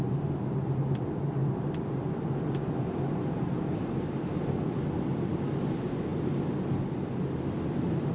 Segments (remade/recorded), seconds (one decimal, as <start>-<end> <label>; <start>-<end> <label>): 0.0-8.1 recorded